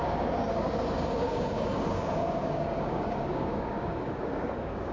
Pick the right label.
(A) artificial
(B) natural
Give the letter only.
A